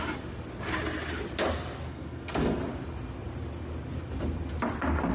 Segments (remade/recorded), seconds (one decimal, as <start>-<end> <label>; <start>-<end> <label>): 0.0-1.9 recorded; 1.9-2.6 remade; 2.6-5.1 recorded